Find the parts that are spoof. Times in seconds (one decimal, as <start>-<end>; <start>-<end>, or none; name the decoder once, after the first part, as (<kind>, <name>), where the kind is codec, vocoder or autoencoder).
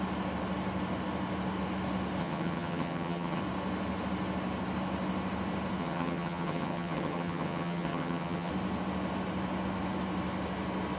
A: 2.2-3.4 (vocoder, HiFi-GAN); 5.8-8.5